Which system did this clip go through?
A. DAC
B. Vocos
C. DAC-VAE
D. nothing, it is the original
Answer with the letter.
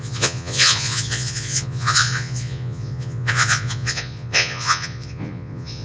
B